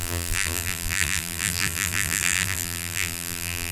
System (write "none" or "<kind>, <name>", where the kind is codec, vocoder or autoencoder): vocoder, BigVGAN v2